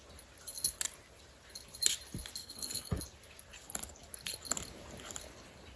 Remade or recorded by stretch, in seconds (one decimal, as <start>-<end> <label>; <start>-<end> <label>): 0.0-2.4 recorded; 2.4-3.0 remade; 3.0-5.8 recorded